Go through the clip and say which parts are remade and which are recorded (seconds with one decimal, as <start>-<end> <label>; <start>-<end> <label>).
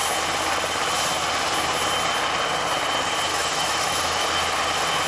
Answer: 0.0-3.3 recorded; 3.3-4.2 remade; 4.2-5.1 recorded